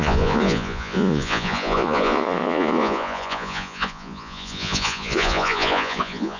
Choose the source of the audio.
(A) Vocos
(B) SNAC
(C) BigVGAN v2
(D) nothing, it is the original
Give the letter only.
A